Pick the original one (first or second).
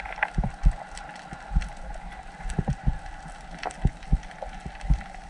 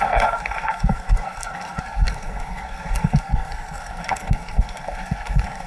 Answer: first